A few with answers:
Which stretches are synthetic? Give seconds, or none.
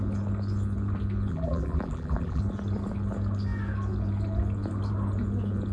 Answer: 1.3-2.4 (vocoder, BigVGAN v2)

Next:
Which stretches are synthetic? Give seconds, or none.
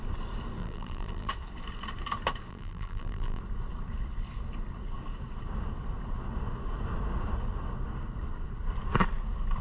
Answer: 0.6-1.3 (vocoder, BigVGAN v2); 2.5-3.4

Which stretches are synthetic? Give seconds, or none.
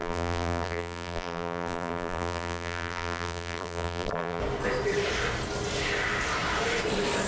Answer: 0.0-4.4 (vocoder, BigVGAN v2)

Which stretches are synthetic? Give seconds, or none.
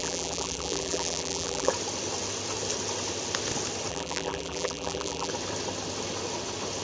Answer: 0.0-1.7 (vocoder, BigVGAN v2); 3.9-5.3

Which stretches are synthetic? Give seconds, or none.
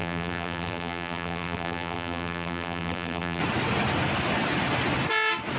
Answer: 0.0-3.4 (vocoder, BigVGAN v2)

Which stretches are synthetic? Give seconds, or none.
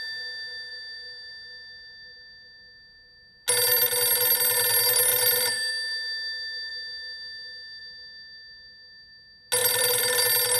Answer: 0.7-1.3 (vocoder, BigVGAN v2); 5.1-5.7; 9.6-10.2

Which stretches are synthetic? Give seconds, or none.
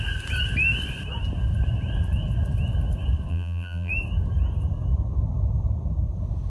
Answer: 3.3-3.9 (vocoder, BigVGAN v2)